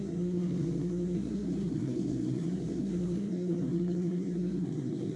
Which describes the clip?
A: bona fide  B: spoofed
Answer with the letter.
B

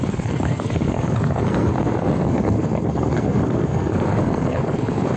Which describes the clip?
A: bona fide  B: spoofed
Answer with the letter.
B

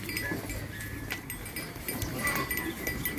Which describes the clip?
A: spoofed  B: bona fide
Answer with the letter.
B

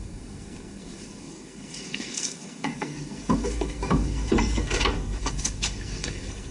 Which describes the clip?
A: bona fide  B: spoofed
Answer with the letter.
B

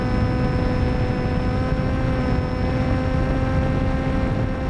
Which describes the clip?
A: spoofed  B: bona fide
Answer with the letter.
B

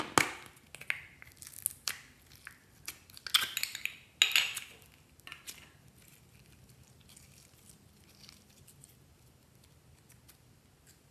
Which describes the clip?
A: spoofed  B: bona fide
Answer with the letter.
B